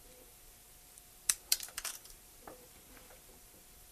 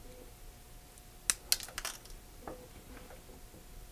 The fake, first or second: first